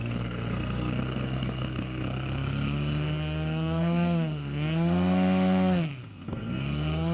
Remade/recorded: remade